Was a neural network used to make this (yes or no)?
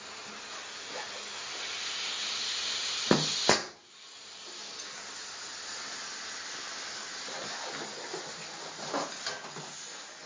no